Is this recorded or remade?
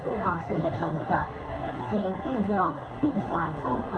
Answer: remade